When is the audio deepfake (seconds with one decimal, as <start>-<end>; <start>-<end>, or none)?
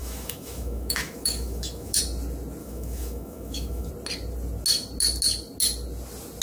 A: 0.0-2.0; 2.6-3.9